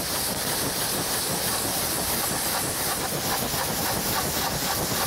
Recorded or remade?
recorded